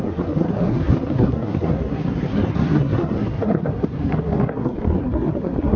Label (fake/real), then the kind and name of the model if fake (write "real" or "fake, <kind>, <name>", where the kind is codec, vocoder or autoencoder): fake, codec, SNAC